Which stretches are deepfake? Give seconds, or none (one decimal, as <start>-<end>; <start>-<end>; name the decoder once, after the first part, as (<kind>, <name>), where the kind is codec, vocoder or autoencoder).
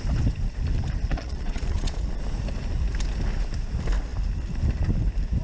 1.1-2.2 (vocoder, Vocos)